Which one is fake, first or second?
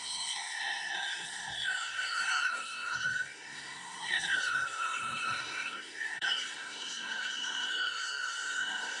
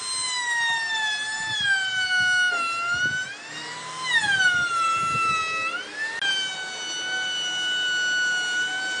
first